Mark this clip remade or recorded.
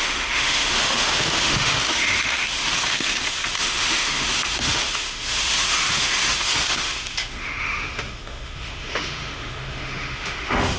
remade